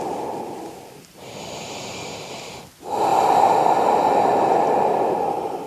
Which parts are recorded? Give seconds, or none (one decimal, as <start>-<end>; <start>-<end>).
0.0-5.7